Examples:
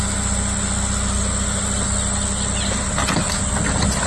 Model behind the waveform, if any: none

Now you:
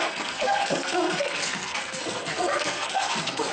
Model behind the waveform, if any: codec, SNAC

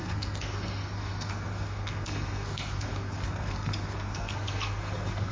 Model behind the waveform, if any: codec, SNAC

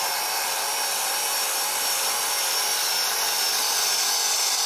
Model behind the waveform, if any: none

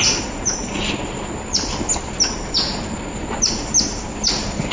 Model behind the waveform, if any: none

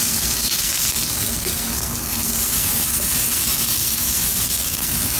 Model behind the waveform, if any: codec, SNAC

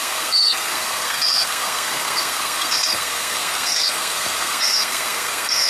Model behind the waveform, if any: codec, SNAC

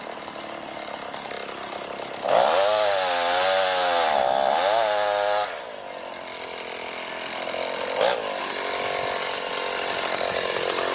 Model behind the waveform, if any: none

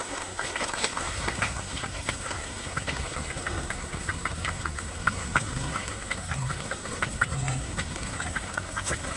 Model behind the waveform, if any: codec, SNAC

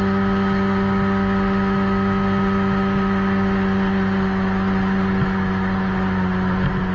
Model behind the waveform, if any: none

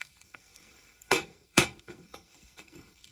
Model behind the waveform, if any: codec, SNAC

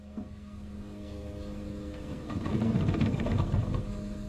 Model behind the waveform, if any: codec, SNAC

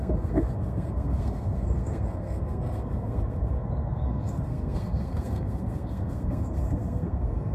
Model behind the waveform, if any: codec, SNAC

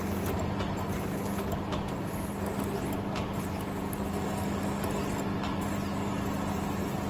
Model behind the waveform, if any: none